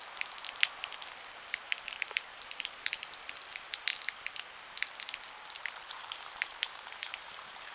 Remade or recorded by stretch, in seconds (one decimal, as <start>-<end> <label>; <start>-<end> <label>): 0.0-3.9 remade; 3.9-5.9 recorded; 5.9-7.7 remade